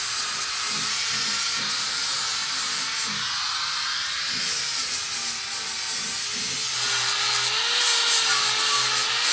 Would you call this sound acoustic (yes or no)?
yes